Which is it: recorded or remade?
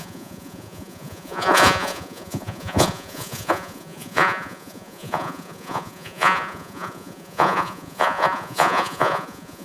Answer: remade